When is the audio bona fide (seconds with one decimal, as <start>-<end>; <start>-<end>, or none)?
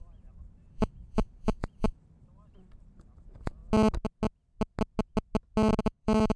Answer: 3.6-5.8